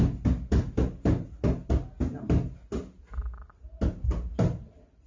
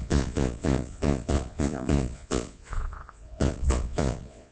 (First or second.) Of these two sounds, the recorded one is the first